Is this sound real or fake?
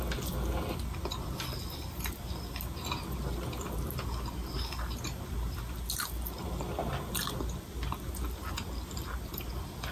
real